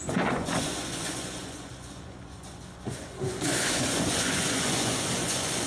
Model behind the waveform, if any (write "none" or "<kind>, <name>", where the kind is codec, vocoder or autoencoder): vocoder, Vocos